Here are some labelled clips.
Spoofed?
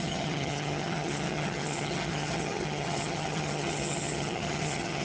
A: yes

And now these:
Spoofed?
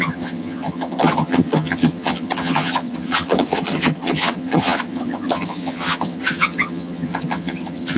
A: yes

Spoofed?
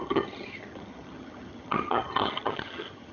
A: yes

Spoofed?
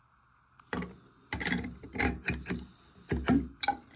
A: no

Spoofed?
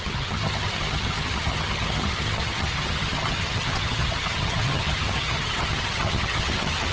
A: yes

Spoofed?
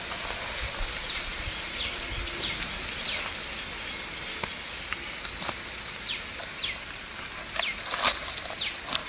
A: no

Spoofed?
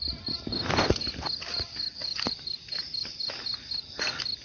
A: no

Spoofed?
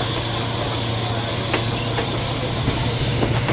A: no